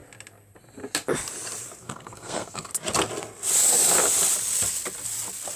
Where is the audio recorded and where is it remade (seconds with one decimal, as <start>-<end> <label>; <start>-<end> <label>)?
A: 0.0-1.8 recorded; 1.8-2.7 remade; 2.7-5.6 recorded

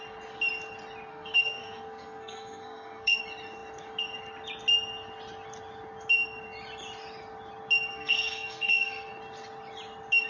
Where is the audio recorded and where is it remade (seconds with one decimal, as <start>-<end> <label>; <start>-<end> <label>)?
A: 0.0-1.1 recorded; 1.1-3.2 remade; 3.2-7.9 recorded; 7.9-9.1 remade; 9.1-10.3 recorded

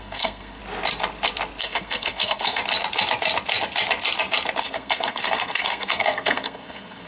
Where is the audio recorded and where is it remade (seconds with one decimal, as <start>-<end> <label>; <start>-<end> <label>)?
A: 0.0-0.6 remade; 0.6-1.6 recorded; 1.6-2.6 remade; 2.6-4.6 recorded; 4.6-7.1 remade

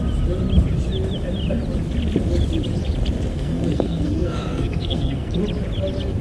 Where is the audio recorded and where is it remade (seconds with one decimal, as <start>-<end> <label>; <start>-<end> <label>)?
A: 0.0-3.3 recorded; 3.3-5.4 remade; 5.4-6.2 recorded

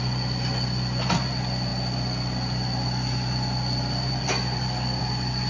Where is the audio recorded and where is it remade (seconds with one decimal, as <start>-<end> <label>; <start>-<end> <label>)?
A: 0.0-5.5 recorded

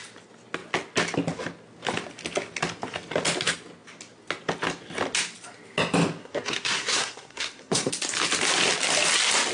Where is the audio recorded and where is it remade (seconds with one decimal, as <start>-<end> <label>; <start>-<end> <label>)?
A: 0.0-6.2 recorded; 6.2-7.9 remade; 7.9-9.5 recorded

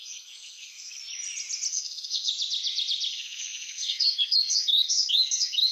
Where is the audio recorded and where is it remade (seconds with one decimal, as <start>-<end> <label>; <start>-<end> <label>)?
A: 0.0-1.0 remade; 1.0-1.7 recorded; 1.7-2.3 remade; 2.3-3.1 recorded; 3.1-5.7 remade

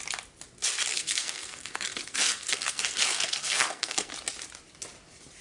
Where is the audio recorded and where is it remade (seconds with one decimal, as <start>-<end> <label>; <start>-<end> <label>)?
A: 0.0-0.9 recorded; 0.9-4.1 remade; 4.1-5.4 recorded